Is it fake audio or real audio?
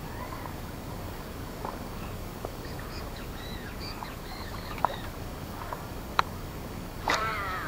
fake